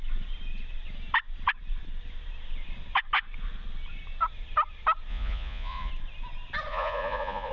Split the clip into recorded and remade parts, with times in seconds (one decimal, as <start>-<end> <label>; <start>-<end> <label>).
0.0-5.1 recorded; 5.1-5.9 remade; 5.9-6.7 recorded; 6.7-7.5 remade